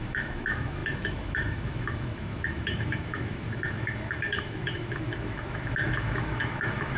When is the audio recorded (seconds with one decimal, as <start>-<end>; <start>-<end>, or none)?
none